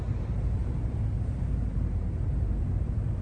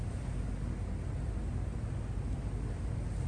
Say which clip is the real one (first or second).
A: second